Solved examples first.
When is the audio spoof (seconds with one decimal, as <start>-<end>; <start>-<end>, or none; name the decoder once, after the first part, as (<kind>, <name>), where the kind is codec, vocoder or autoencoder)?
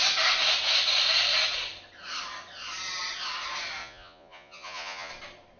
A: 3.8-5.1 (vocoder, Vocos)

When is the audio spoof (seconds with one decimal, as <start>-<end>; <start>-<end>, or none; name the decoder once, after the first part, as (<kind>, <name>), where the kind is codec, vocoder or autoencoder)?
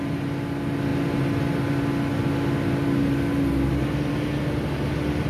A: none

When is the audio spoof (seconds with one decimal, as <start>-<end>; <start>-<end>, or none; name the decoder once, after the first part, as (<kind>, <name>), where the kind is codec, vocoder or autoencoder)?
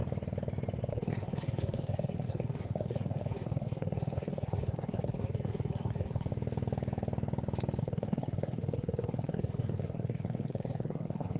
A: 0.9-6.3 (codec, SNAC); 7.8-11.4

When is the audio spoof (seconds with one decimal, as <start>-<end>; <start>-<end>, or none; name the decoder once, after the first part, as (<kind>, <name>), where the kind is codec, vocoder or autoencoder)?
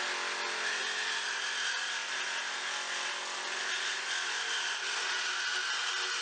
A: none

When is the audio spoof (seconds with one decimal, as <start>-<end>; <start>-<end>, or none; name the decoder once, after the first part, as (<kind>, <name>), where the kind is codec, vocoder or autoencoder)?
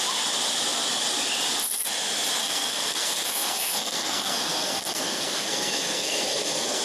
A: 2.4-6.8 (codec, SNAC)